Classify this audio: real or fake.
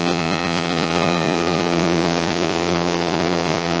fake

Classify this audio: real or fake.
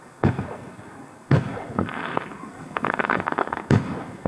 fake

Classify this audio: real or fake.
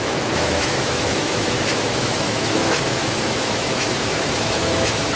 fake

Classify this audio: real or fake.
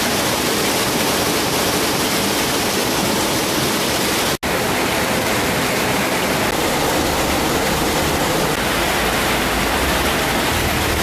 real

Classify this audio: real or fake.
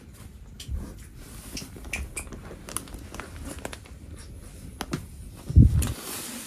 real